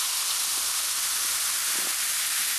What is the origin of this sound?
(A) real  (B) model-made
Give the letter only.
A